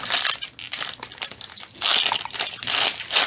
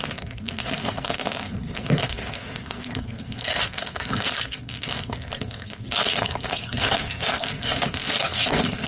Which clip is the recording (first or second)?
first